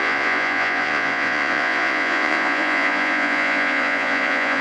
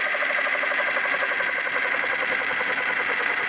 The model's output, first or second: first